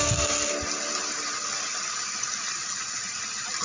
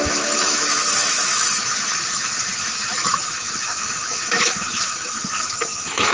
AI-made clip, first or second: second